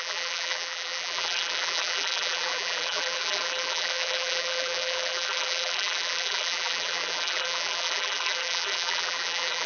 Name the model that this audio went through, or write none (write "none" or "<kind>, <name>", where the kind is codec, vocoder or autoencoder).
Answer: vocoder, BigVGAN v2